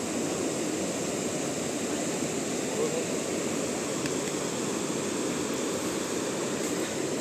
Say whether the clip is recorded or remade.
recorded